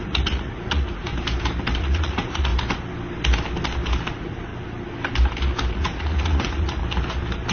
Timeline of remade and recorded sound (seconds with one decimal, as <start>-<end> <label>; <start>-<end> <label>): 0.0-1.1 remade; 1.1-1.8 recorded; 1.8-2.5 remade; 2.5-4.1 recorded; 4.1-4.5 remade; 4.5-5.7 recorded; 5.7-6.8 remade; 6.8-7.5 recorded